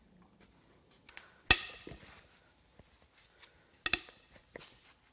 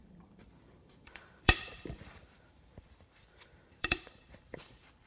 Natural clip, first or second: first